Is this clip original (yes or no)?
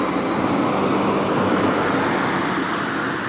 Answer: yes